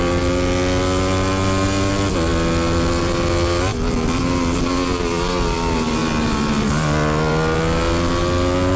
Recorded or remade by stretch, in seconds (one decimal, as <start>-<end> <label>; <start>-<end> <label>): 0.0-8.8 recorded